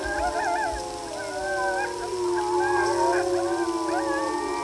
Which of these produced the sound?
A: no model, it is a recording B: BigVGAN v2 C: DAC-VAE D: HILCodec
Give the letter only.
A